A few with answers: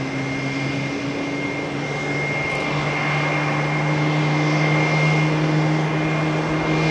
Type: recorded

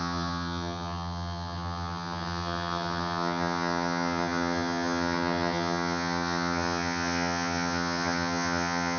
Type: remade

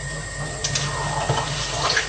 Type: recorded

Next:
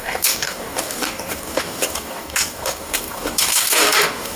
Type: remade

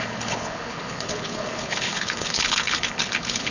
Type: remade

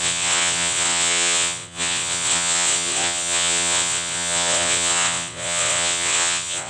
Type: remade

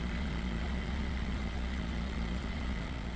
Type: remade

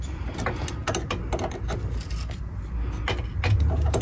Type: recorded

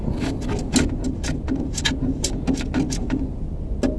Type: recorded